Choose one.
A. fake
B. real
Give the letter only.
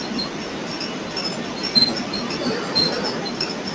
B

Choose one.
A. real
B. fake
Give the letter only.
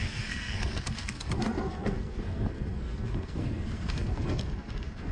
B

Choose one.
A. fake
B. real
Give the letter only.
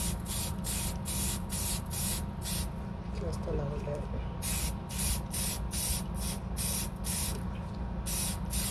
B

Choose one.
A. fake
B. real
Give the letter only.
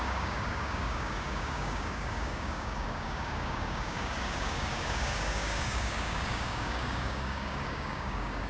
A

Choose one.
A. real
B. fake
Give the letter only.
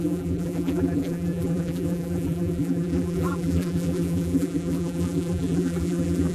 B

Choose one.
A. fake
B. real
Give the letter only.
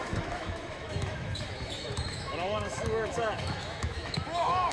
A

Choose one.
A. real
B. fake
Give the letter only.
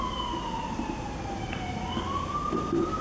A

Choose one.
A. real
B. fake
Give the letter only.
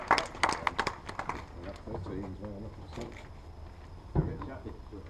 A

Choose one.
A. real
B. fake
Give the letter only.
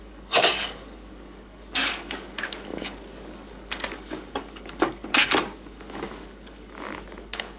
B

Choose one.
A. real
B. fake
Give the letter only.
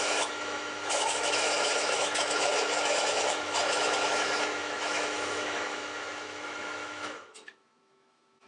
B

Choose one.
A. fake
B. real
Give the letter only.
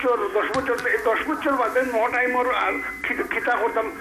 B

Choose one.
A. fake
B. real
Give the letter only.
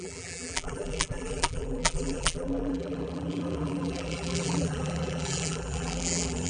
A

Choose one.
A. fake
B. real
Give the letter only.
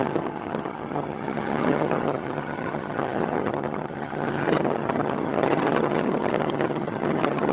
A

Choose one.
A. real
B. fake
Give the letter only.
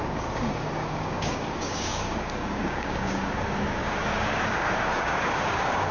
B